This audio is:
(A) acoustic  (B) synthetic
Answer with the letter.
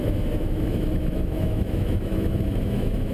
B